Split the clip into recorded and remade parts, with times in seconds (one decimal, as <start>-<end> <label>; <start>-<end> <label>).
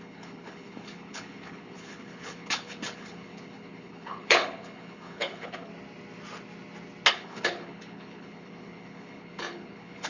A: 0.0-5.7 remade; 5.7-7.1 recorded; 7.1-10.1 remade